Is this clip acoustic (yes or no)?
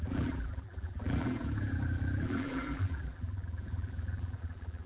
no